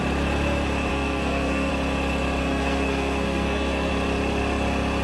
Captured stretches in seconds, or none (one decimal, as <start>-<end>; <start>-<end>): 0.0-0.9; 1.7-2.4; 3.9-5.0